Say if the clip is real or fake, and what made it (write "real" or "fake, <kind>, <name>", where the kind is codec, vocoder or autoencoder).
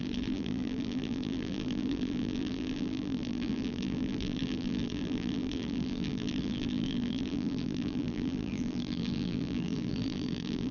fake, vocoder, BigVGAN v2